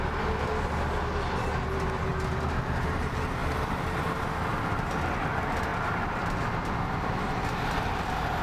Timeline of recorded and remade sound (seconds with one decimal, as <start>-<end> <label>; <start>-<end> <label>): 0.0-8.4 recorded